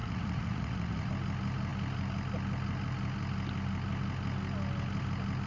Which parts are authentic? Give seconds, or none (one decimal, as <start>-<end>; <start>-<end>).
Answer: 1.1-5.5